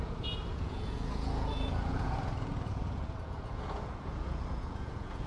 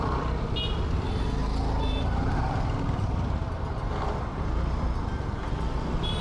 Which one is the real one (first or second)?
second